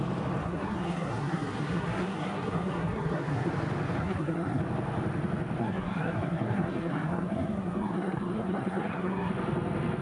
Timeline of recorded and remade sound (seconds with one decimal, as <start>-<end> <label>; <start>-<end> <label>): 0.0-0.4 recorded; 0.4-3.5 remade; 3.5-4.0 recorded; 4.0-4.6 remade; 4.6-5.6 recorded; 5.6-9.3 remade; 9.3-10.0 recorded